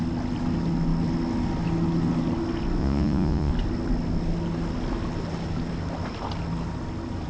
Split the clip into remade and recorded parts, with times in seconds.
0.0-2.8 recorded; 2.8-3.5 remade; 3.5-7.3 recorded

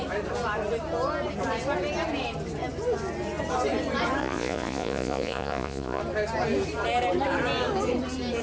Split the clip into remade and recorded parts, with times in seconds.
0.0-4.2 recorded; 4.2-6.0 remade; 6.0-8.4 recorded

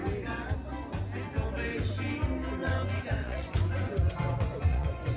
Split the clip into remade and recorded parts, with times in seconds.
0.0-2.6 recorded; 2.6-5.2 remade

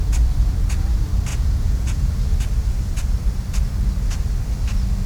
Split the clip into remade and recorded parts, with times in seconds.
0.0-1.3 recorded; 1.3-2.1 remade; 2.1-5.1 recorded

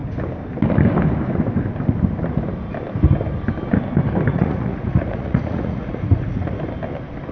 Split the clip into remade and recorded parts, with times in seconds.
0.0-4.3 recorded; 4.3-6.6 remade; 6.6-7.3 recorded

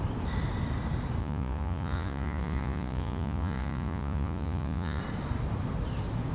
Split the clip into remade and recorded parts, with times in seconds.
0.0-1.2 recorded; 1.2-5.0 remade; 5.0-6.3 recorded

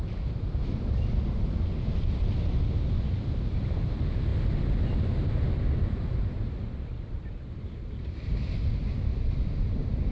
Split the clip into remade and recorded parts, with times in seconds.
0.0-10.1 recorded